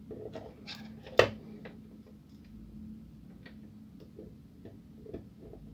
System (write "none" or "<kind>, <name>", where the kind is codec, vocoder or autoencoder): none